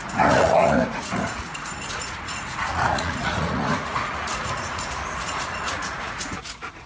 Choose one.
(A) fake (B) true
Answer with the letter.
A